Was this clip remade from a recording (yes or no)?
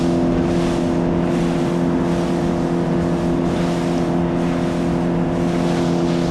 no